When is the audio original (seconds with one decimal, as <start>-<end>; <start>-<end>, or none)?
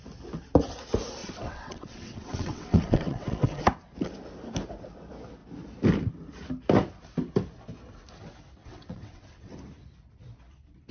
0.0-1.2; 3.6-8.6; 9.5-10.9